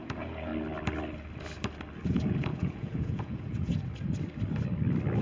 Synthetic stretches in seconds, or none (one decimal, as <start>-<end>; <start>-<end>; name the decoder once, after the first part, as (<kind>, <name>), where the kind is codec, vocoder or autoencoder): 0.0-0.5 (vocoder, Vocos); 2.1-3.7